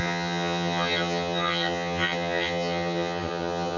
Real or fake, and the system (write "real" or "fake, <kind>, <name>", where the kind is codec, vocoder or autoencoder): fake, vocoder, HiFi-GAN